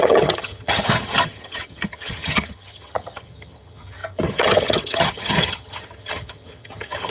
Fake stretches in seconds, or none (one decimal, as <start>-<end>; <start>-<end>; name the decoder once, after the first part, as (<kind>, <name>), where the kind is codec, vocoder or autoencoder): 0.0-7.1 (vocoder, HiFi-GAN)